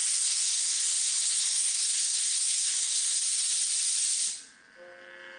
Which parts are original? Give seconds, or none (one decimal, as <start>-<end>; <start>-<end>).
3.2-5.4